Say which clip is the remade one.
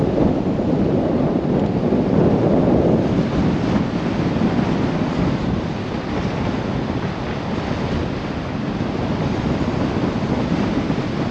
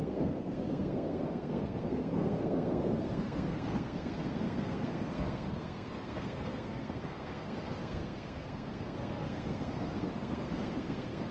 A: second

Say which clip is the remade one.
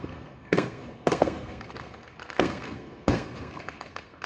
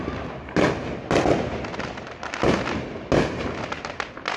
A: first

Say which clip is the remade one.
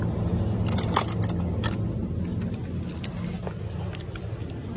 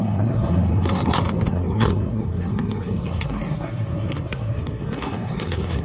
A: second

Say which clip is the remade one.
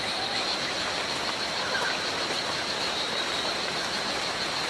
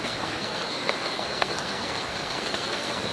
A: second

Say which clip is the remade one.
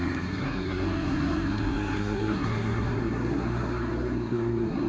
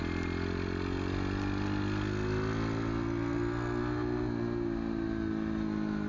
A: first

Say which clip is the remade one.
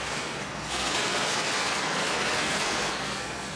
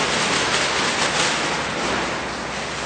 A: first